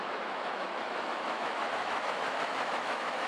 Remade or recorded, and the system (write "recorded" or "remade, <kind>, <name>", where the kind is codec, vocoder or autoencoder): remade, autoencoder, DAC-VAE